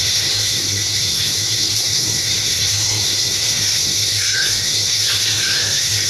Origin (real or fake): fake